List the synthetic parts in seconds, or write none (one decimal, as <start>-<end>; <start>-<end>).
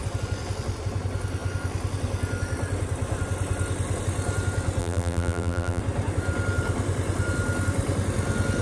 4.8-5.8